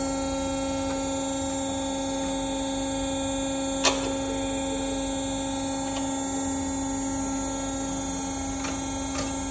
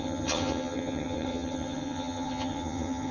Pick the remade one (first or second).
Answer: second